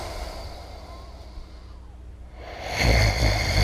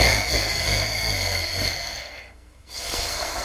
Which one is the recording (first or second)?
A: first